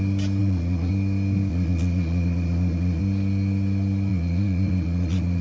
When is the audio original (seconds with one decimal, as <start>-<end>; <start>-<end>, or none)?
0.0-0.4; 0.9-1.5; 3.0-4.1

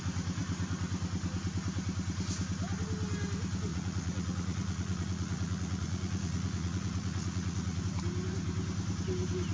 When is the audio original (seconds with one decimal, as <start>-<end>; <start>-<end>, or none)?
0.0-3.7; 7.8-9.5

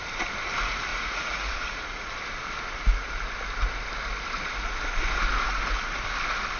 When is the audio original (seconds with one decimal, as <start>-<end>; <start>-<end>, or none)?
0.0-0.9; 2.1-6.6